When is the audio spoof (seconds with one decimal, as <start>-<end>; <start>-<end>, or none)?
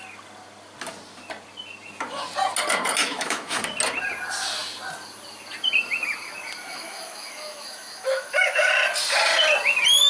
3.0-3.6; 6.7-8.7